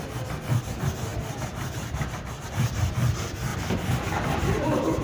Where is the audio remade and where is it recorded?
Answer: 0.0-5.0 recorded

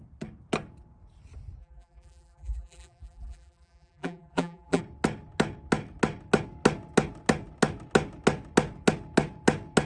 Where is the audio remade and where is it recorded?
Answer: 0.0-1.6 recorded; 1.6-4.8 remade; 4.8-9.9 recorded

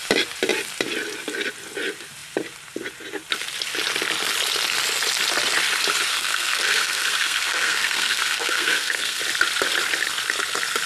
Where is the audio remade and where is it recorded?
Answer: 0.0-6.1 recorded; 6.1-9.2 remade; 9.2-10.9 recorded

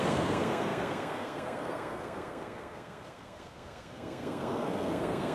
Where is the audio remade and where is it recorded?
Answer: 0.0-5.3 remade